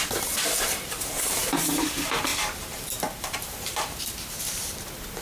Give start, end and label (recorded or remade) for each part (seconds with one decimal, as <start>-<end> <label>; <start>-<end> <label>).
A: 0.0-2.3 remade; 2.3-3.4 recorded; 3.4-5.2 remade